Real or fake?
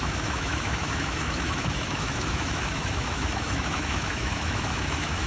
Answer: fake